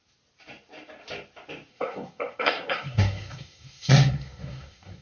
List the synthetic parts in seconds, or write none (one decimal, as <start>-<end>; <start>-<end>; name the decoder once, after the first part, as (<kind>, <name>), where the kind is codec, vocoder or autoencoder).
1.7-5.0 (codec, SNAC)